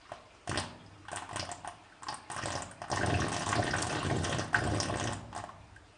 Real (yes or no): yes